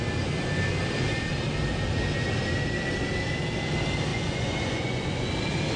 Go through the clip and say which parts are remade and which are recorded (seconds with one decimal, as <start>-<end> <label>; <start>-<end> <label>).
0.0-4.1 recorded; 4.1-5.3 remade; 5.3-5.8 recorded